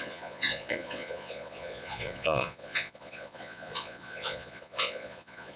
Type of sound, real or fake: fake